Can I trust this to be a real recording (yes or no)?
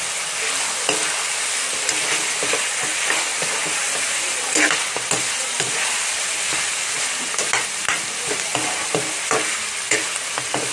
yes